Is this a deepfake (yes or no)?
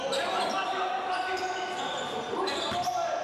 no